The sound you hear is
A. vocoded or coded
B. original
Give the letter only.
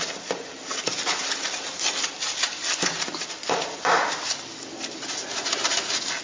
B